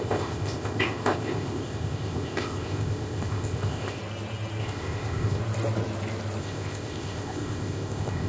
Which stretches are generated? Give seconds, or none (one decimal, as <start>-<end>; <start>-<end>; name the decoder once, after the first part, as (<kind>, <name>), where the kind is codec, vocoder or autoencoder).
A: 0.0-4.0 (codec, ZipCodec); 4.6-5.4; 6.4-8.3